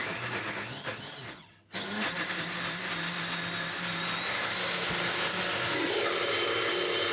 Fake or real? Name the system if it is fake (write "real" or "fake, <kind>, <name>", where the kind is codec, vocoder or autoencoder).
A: real